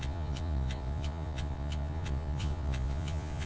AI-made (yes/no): yes